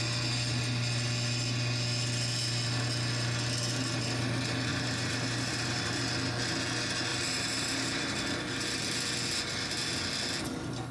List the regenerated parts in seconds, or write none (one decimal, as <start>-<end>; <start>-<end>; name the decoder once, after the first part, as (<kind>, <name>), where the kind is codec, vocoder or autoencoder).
4.7-6.0 (vocoder, BigVGAN v2); 7.1-8.1